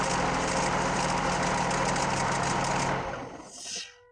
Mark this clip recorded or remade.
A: recorded